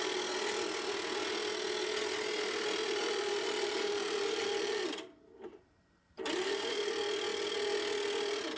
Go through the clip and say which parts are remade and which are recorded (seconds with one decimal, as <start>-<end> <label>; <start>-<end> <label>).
0.0-2.8 recorded; 2.8-6.8 remade; 6.8-8.6 recorded